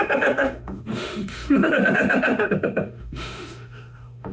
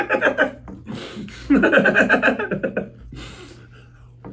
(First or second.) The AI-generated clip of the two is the first